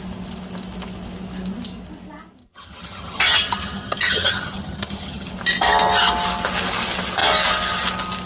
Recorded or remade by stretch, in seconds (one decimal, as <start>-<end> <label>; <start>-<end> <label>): 0.0-2.4 recorded; 2.4-5.3 remade; 5.3-8.3 recorded